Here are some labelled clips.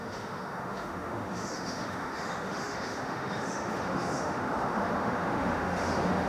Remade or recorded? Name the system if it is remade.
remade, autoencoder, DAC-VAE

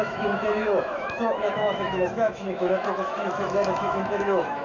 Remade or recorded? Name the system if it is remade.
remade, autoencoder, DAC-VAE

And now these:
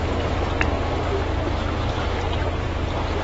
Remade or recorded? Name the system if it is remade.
recorded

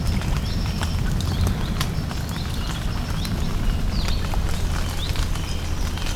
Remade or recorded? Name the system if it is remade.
recorded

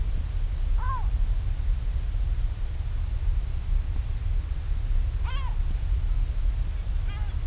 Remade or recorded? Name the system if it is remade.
recorded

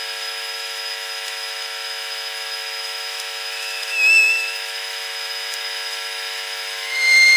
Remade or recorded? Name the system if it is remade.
remade, autoencoder, DAC-VAE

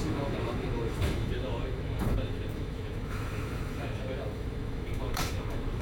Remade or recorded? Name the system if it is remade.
remade, autoencoder, DAC-VAE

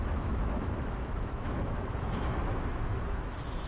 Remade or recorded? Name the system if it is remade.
remade, autoencoder, DAC-VAE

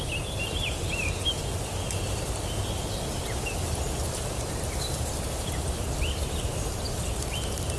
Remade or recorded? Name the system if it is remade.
recorded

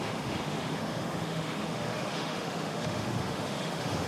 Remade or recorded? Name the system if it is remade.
remade, autoencoder, DAC-VAE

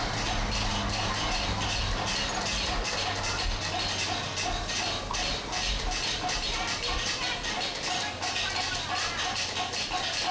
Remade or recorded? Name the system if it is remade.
recorded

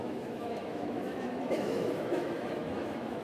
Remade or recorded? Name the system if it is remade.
remade, autoencoder, DAC-VAE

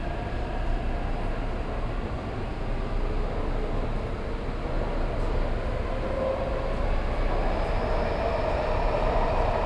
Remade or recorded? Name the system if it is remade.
recorded